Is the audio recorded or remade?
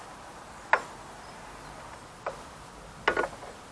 recorded